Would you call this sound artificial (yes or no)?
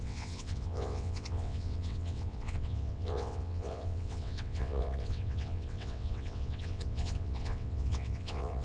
yes